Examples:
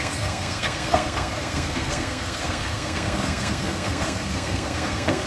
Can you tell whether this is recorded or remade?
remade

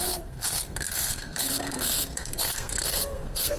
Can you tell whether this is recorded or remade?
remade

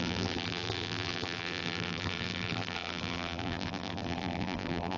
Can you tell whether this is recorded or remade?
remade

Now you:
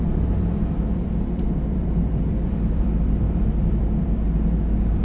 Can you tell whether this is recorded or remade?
remade